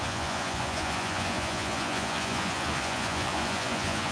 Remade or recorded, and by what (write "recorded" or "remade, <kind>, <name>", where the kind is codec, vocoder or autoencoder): remade, vocoder, Vocos